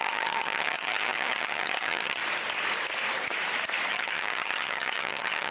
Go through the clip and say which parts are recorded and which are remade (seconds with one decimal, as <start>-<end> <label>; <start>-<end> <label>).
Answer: 0.0-2.2 remade; 2.2-3.9 recorded; 3.9-5.5 remade